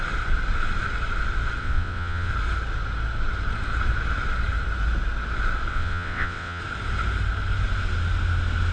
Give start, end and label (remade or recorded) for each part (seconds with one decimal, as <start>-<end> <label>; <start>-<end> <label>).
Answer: 0.0-1.6 recorded; 1.6-2.3 remade; 2.3-5.7 recorded; 5.7-6.6 remade; 6.6-8.7 recorded